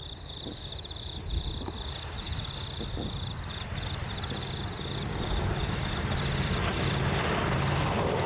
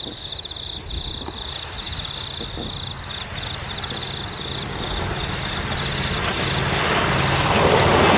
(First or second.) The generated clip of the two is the first